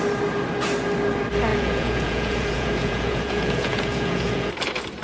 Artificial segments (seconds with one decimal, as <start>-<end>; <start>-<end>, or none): 1.5-4.5